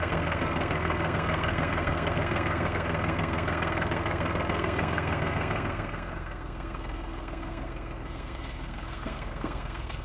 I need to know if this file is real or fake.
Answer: fake